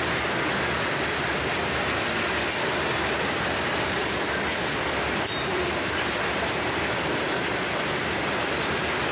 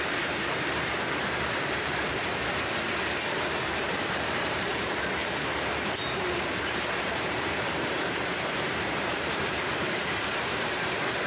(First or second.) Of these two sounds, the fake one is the second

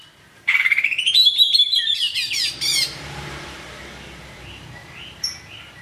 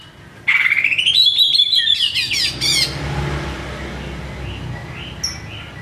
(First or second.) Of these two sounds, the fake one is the first